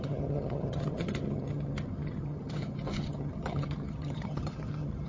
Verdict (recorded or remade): remade